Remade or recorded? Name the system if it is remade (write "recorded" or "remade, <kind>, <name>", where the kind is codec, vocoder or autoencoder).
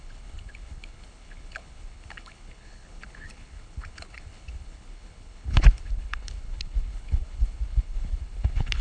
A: remade, codec, HILCodec